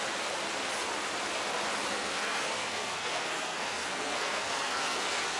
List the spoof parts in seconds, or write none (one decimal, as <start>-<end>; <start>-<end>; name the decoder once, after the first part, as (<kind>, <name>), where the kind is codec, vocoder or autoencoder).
1.9-5.4 (codec, SNAC)